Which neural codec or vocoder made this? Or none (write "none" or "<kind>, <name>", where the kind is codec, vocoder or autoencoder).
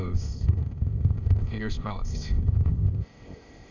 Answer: codec, ZipCodec